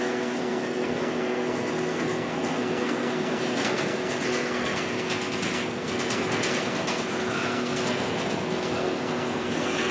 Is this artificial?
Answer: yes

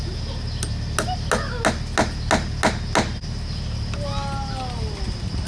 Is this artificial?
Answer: no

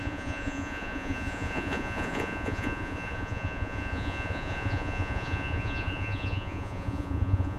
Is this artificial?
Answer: yes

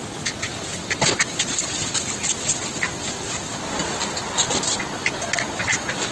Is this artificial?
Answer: no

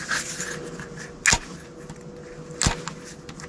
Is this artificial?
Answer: no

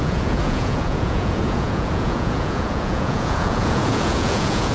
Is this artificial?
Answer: yes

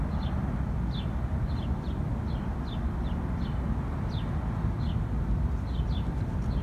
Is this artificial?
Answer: no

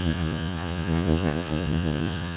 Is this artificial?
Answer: yes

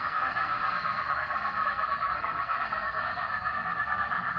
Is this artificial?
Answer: yes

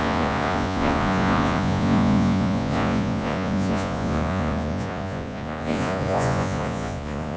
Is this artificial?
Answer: yes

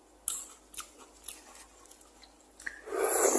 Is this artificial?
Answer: no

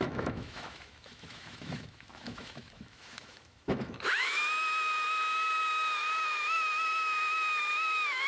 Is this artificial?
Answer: yes